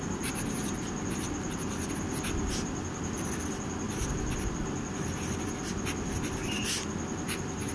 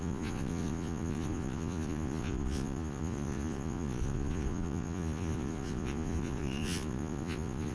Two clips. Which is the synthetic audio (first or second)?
second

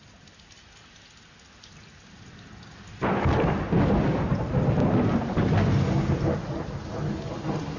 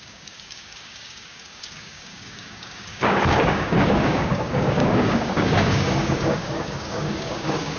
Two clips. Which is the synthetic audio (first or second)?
second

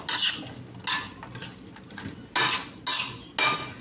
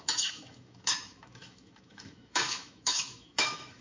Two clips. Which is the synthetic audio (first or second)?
second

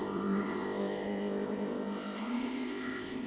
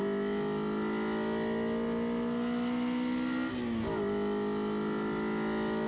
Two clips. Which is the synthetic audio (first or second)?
first